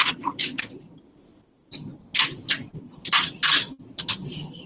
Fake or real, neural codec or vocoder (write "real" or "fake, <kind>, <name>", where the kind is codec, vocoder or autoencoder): real